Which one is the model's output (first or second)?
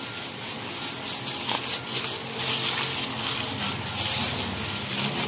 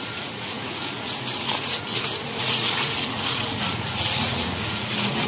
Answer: second